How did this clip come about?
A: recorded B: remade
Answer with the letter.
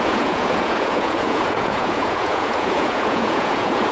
B